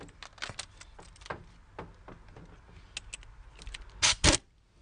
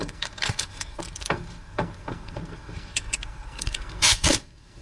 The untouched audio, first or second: first